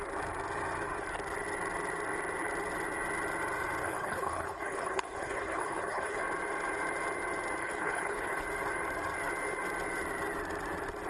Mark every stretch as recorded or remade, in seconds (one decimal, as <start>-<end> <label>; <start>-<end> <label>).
0.0-3.8 recorded; 3.8-6.2 remade; 6.2-7.6 recorded; 7.6-8.4 remade; 8.4-11.1 recorded